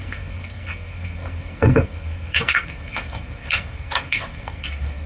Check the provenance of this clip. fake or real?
fake